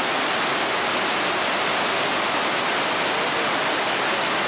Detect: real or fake real